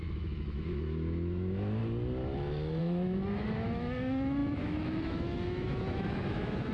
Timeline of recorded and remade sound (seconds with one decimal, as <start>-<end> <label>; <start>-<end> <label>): 0.0-1.8 remade; 1.8-2.8 recorded; 2.8-6.7 remade